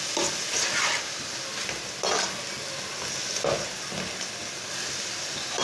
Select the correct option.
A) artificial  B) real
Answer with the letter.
B